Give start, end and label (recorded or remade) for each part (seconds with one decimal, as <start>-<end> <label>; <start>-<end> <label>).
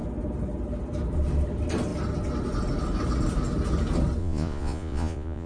0.0-4.2 recorded; 4.2-5.5 remade